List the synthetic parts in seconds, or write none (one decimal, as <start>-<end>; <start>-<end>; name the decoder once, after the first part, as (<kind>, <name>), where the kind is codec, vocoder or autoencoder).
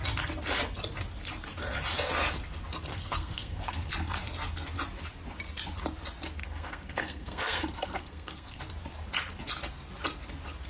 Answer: 2.9-3.9 (codec, SNAC); 6.4-8.6